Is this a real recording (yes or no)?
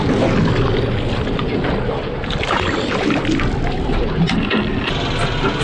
yes